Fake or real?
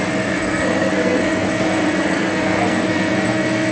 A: fake